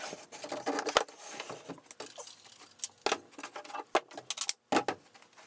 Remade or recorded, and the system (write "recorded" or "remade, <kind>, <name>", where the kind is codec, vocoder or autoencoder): recorded